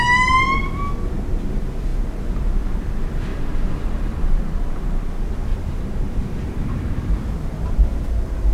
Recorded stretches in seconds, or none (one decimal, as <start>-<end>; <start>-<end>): 0.0-3.3; 4.4-5.5; 7.1-8.5